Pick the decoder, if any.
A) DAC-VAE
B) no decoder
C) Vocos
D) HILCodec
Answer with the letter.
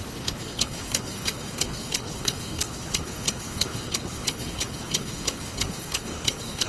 D